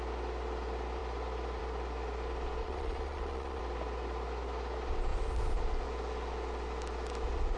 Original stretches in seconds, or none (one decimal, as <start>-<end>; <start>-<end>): 0.0-2.6; 3.6-7.6